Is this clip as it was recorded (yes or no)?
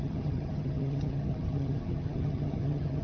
no